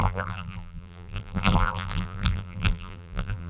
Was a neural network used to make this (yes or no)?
yes